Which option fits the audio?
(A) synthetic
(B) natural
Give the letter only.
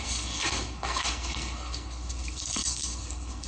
A